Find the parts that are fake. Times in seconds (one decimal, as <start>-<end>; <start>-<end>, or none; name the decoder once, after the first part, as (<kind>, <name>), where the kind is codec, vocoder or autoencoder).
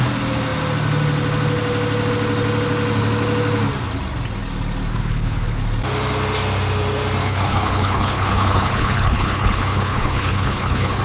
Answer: 4.9-5.6 (codec, HILCodec); 7.2-11.0